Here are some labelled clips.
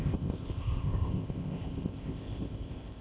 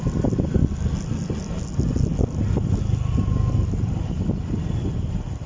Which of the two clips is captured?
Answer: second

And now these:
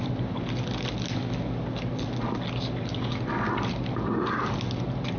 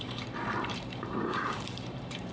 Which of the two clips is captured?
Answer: first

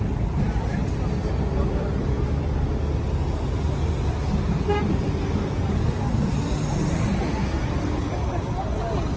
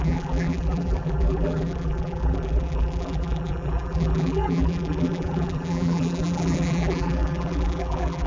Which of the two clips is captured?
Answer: first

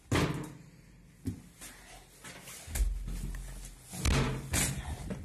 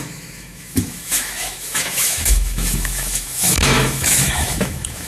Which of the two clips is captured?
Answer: first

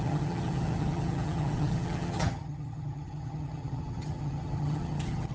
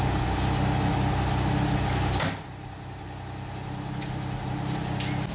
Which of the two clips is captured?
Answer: second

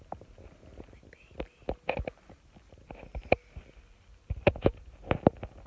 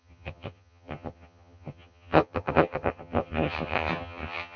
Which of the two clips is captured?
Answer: first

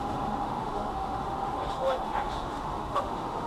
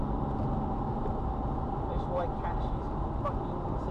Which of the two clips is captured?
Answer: second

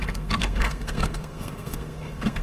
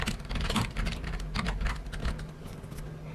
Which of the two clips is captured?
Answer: second